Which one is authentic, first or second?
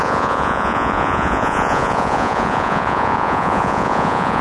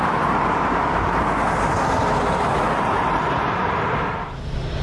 second